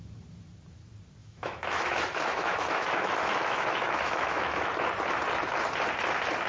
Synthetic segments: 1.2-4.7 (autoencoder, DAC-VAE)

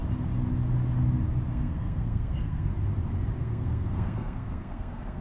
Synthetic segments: 1.5-2.7 (codec, SNAC); 3.4-5.2

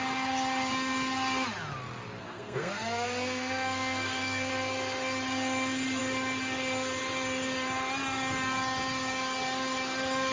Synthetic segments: 2.2-4.5 (codec, SNAC)

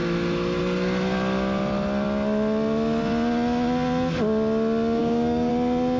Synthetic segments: 5.0-5.5 (codec, DAC)

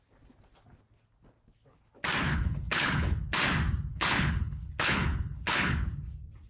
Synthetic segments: 2.3-3.2 (codec, HILCodec); 3.9-6.0

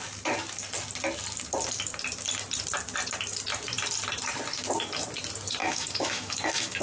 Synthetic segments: 5.6-6.8 (autoencoder, DAC-VAE)

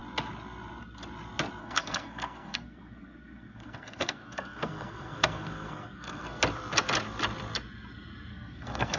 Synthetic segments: 1.6-6.4 (codec, SNAC); 8.3-9.0

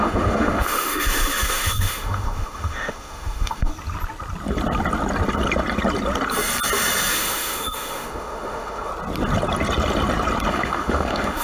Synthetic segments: 0.0-3.7 (autoencoder, DAC-VAE); 7.1-8.9; 10.5-11.4